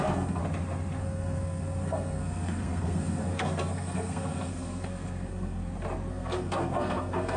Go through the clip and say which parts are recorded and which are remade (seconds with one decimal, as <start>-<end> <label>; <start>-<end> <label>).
0.0-0.4 remade; 0.4-1.0 recorded; 1.0-5.6 remade; 5.6-6.1 recorded; 6.1-7.4 remade